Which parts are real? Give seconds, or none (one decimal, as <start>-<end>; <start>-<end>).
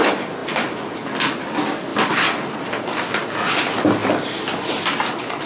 0.0-5.5